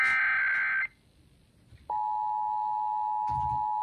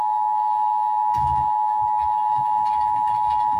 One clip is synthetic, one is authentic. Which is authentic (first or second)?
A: first